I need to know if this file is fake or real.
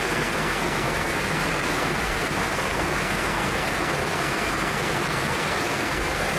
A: fake